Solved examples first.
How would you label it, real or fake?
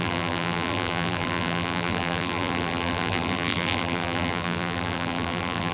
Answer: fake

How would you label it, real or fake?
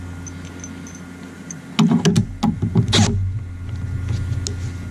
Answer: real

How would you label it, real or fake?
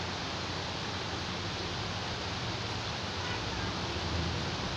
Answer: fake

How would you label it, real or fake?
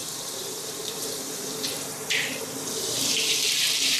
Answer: fake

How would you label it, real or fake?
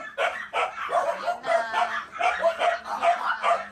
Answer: fake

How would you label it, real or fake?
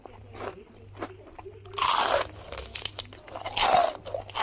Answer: real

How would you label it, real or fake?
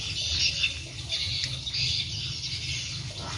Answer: real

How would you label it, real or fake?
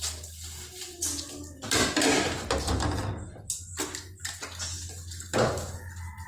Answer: real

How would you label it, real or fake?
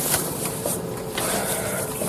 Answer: fake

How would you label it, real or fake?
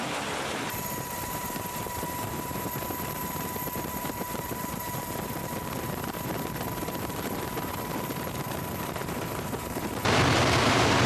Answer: fake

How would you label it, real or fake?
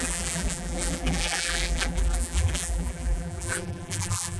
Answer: fake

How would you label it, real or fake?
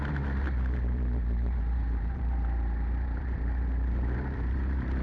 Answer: fake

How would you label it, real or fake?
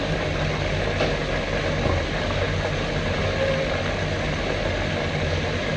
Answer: real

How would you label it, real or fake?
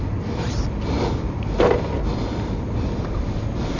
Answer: real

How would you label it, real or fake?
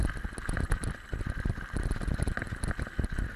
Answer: real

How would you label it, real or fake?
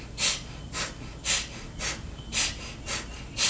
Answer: real